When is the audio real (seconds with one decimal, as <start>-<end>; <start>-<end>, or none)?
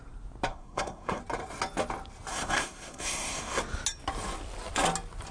0.0-0.5; 1.2-2.3; 3.6-5.3